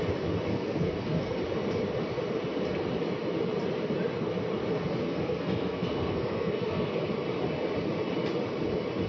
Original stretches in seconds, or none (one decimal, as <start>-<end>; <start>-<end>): 0.0-0.5; 1.4-5.0; 7.0-9.1